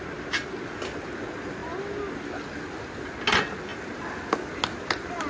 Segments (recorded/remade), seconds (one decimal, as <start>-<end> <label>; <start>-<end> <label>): 0.0-5.3 recorded